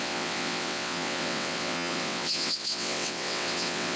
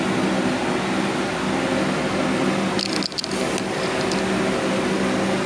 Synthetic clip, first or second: first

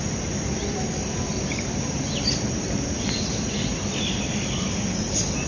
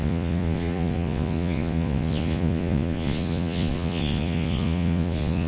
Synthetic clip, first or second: second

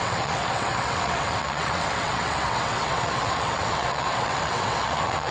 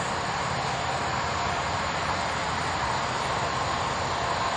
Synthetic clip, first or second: first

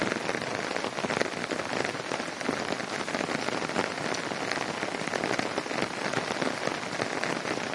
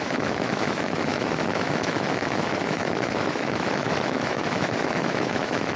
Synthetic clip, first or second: second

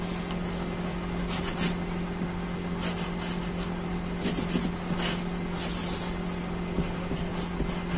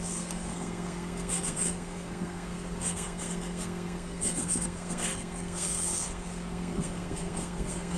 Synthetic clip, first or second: second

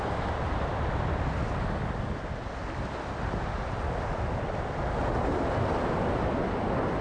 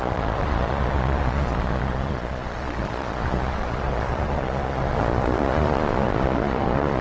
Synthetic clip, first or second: second